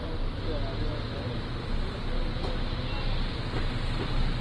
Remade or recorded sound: recorded